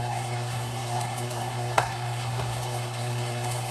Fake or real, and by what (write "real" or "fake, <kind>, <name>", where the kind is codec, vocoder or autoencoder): fake, codec, SNAC